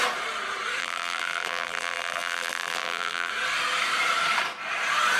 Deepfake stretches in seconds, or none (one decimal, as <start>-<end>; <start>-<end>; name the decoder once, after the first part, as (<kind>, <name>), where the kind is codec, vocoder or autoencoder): 0.8-3.3 (vocoder, BigVGAN v2)